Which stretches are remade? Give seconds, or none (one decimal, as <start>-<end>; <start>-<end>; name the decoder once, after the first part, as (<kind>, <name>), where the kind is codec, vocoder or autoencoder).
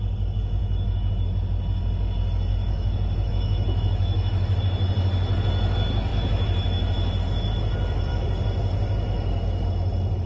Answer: 0.6-1.1 (autoencoder, DAC-VAE); 2.5-4.6